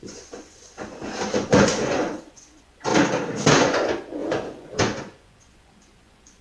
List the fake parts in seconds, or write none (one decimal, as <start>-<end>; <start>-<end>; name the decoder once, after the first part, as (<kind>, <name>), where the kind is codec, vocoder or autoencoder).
0.0-2.9 (vocoder, Vocos); 3.5-6.4